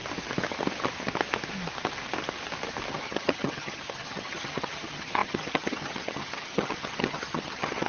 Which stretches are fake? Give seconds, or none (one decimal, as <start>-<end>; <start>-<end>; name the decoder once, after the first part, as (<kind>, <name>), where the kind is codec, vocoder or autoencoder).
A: 2.9-7.9 (vocoder, HiFi-GAN)